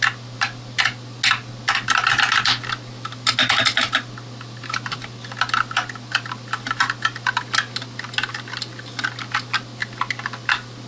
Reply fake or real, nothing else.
real